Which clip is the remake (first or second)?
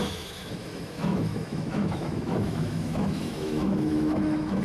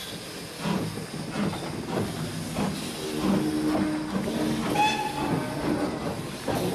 first